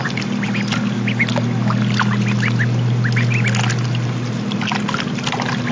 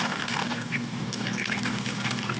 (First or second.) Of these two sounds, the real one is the first